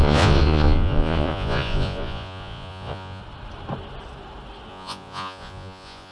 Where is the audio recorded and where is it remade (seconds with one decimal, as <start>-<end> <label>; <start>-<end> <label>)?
0.0-3.2 remade; 3.2-4.7 recorded; 4.7-6.1 remade